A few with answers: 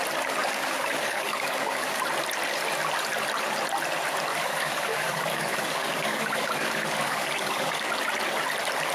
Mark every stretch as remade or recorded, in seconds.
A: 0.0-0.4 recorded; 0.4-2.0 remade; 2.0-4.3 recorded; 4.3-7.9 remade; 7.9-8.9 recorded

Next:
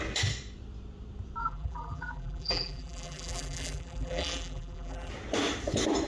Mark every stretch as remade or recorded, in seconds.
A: 0.0-1.4 recorded; 1.4-5.1 remade; 5.1-6.1 recorded

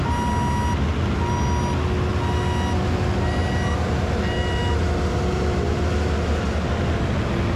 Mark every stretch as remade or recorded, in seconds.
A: 0.0-7.6 recorded

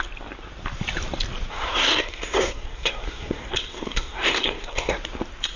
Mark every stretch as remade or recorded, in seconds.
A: 0.0-1.5 recorded; 1.5-4.9 remade; 4.9-5.6 recorded

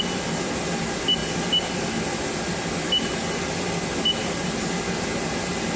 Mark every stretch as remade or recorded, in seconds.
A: 0.0-4.2 recorded; 4.2-4.7 remade; 4.7-5.8 recorded

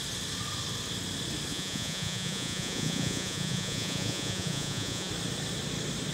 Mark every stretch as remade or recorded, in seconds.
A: 0.0-1.5 recorded; 1.5-5.1 remade; 5.1-6.1 recorded

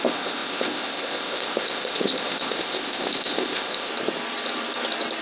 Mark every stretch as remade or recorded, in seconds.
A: 0.0-3.9 remade; 3.9-5.2 recorded

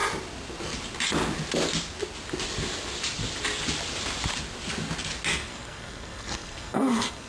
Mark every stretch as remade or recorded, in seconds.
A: 0.0-5.3 recorded; 5.3-7.3 remade